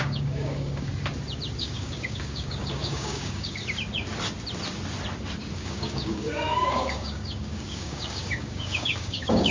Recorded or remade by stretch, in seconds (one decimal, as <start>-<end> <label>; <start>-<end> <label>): 0.0-0.9 remade; 0.9-1.6 recorded; 1.6-3.6 remade; 3.6-5.5 recorded; 5.5-9.5 remade